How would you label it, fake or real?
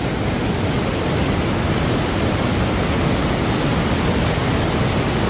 real